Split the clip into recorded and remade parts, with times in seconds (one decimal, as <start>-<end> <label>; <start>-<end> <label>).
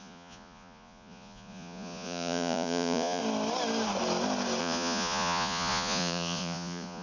0.0-3.2 remade; 3.2-4.6 recorded; 4.6-7.0 remade